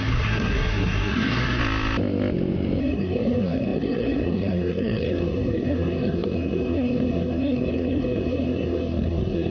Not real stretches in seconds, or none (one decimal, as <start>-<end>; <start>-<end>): 0.0-1.6; 2.8-9.5